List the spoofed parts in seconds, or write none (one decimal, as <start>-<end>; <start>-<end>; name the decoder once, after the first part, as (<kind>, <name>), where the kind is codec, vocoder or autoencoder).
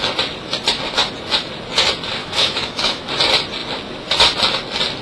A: 2.2-3.1 (autoencoder, DAC-VAE)